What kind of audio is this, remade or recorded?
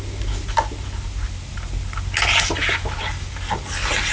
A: recorded